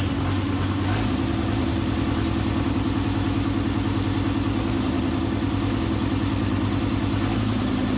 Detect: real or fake real